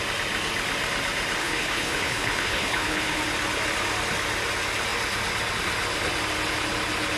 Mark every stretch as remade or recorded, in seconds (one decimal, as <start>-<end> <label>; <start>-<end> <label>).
0.0-1.4 recorded; 1.4-3.2 remade; 3.2-7.2 recorded